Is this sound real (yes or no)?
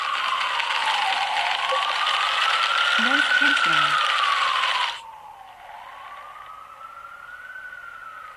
yes